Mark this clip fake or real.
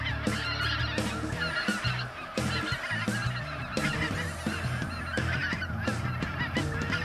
real